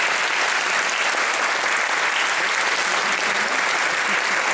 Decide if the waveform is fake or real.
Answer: real